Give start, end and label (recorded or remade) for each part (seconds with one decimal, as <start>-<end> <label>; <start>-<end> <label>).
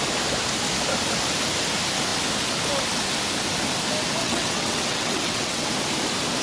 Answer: 0.0-4.2 recorded; 4.2-5.7 remade; 5.7-6.4 recorded